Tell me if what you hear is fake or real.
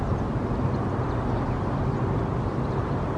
real